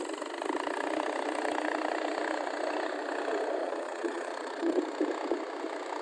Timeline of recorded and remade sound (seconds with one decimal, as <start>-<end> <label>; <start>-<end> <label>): 0.0-3.6 recorded; 3.6-4.8 remade; 4.8-6.0 recorded